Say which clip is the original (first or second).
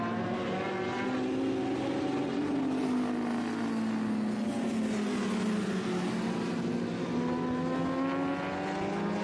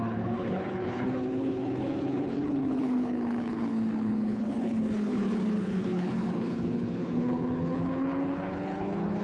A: first